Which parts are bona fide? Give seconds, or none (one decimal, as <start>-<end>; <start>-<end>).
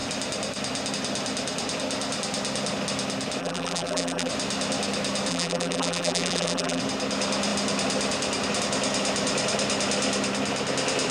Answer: 0.0-3.4; 4.3-5.3; 6.8-11.1